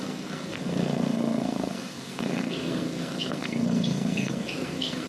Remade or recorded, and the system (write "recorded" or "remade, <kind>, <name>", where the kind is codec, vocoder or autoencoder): remade, codec, SNAC